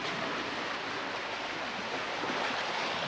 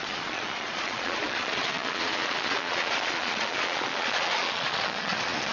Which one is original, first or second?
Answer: first